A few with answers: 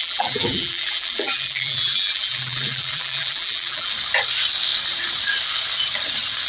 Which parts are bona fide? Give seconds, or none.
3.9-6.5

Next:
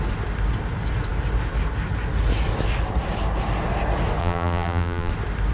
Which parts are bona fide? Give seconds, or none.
0.0-4.2; 5.1-5.5